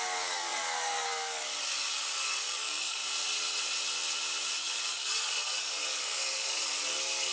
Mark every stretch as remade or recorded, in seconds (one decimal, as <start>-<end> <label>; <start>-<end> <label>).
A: 0.0-3.0 remade; 3.0-4.6 recorded; 4.6-7.3 remade